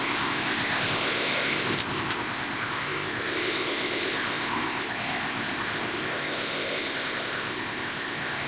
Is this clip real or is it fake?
fake